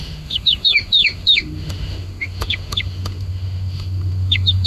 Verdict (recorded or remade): remade